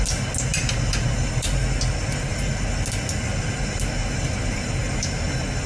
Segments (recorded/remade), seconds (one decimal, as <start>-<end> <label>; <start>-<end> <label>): 0.0-0.5 recorded; 0.5-1.3 remade; 1.3-4.0 recorded; 4.0-5.2 remade; 5.2-5.7 recorded